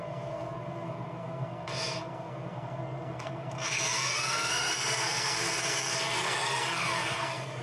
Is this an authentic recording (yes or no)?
no